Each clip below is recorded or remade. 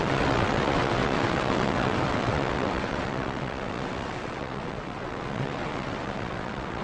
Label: remade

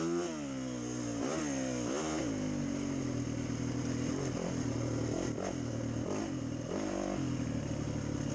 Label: recorded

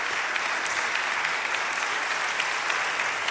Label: recorded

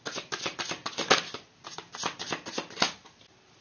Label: recorded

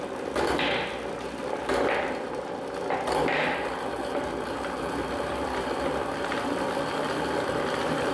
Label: recorded